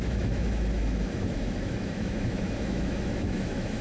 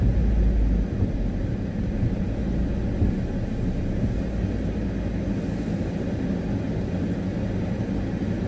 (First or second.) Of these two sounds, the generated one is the first